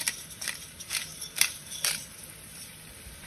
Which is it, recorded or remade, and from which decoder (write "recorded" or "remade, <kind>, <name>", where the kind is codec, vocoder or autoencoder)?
remade, vocoder, BigVGAN v2